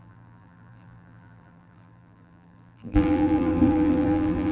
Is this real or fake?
fake